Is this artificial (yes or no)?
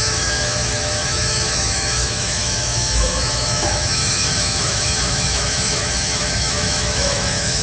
yes